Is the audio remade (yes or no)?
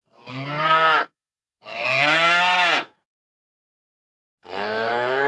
yes